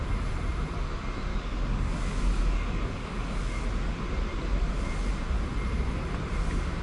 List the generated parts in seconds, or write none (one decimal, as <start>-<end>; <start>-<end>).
1.3-3.6